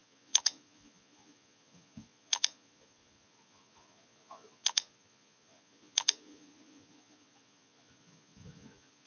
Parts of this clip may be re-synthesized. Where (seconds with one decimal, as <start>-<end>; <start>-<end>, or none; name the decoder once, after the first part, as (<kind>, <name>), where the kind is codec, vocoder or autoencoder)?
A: 0.0-9.1 (vocoder, Vocos)